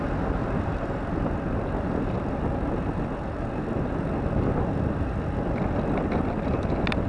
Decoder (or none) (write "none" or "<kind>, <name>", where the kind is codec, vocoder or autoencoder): none